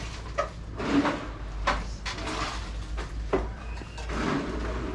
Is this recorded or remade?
recorded